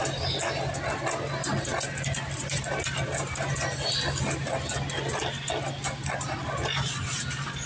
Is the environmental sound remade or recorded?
recorded